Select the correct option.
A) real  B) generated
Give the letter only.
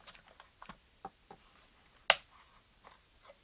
A